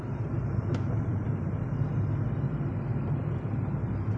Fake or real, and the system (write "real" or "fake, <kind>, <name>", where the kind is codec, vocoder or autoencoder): real